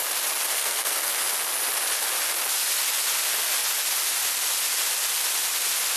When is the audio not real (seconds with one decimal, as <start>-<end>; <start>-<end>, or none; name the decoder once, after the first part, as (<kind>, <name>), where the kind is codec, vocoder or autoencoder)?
0.5-1.1 (codec, SNAC)

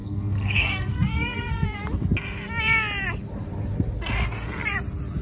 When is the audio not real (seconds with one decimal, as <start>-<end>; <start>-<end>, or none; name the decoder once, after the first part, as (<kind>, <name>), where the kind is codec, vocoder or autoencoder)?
0.0-1.8 (codec, SNAC)

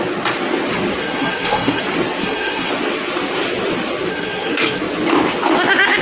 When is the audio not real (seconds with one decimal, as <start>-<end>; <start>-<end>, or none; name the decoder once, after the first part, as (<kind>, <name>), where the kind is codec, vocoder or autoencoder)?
1.0-1.8 (codec, SNAC); 2.2-2.7; 4.1-4.8